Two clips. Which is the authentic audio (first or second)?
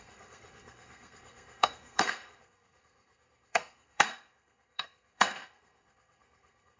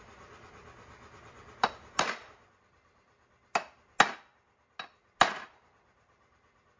second